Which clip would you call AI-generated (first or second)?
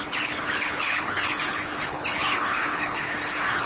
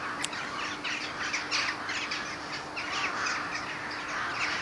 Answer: first